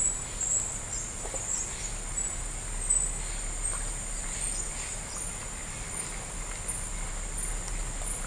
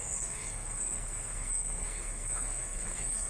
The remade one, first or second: second